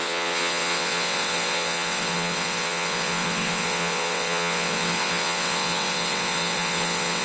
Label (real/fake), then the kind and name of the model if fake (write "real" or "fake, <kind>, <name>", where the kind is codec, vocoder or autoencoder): fake, vocoder, WaveNeXt